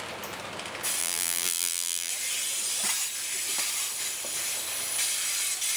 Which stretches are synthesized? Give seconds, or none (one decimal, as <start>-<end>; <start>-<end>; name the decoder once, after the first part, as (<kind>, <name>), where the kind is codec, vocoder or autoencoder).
1.0-2.1 (vocoder, BigVGAN v2)

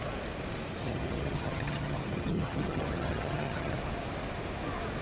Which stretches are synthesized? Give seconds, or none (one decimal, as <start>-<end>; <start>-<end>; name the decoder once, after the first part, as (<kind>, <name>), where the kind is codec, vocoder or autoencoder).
0.8-3.8 (vocoder, HiFi-GAN)

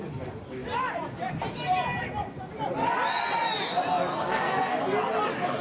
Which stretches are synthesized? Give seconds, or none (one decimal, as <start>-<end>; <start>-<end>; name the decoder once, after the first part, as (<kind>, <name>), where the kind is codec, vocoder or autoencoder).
4.1-4.8 (codec, SNAC)

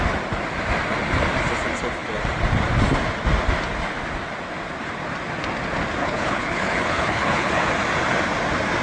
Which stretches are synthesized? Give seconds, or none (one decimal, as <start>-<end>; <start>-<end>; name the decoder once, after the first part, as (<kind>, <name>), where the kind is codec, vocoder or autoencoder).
6.0-7.7 (codec, HILCodec)

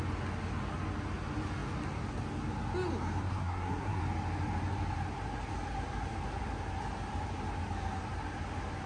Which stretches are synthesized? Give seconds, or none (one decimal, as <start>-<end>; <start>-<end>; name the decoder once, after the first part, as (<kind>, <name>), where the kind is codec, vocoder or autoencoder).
3.2-4.0 (codec, SNAC)

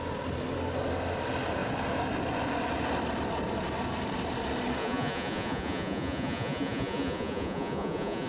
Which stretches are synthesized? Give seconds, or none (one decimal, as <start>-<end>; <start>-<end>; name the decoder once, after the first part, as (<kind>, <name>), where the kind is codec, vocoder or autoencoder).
4.8-8.3 (vocoder, Vocos)